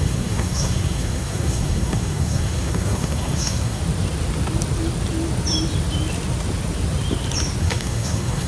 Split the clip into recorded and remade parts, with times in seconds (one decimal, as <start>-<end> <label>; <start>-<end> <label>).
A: 0.0-3.8 remade; 3.8-7.6 recorded; 7.6-8.5 remade